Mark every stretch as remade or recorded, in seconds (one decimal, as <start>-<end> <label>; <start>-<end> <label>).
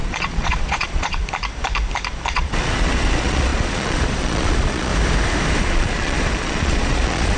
0.0-1.2 remade; 1.2-2.3 recorded; 2.3-4.9 remade; 4.9-5.6 recorded; 5.6-7.4 remade